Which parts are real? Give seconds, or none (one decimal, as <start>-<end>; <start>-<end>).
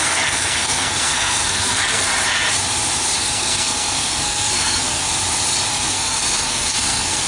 2.1-3.2; 5.1-5.7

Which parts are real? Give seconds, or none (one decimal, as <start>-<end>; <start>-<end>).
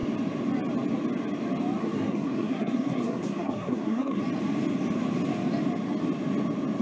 0.0-1.8; 4.2-6.8